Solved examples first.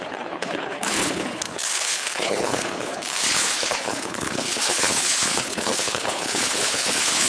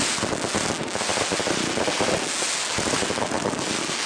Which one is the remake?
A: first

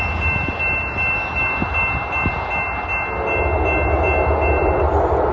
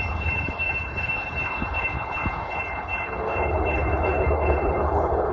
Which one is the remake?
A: second